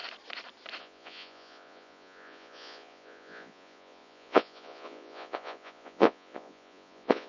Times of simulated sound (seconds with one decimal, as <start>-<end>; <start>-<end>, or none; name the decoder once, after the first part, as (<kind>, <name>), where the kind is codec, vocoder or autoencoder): 0.8-7.3 (vocoder, Vocos)